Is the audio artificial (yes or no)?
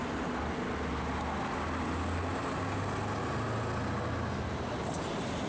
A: no